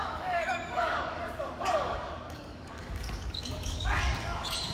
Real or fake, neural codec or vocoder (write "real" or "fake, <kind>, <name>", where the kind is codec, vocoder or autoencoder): fake, codec, DAC